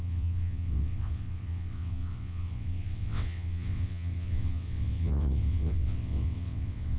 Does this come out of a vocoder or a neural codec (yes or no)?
yes